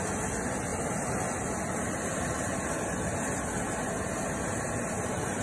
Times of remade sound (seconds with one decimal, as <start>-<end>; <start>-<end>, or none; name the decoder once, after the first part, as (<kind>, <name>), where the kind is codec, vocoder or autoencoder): none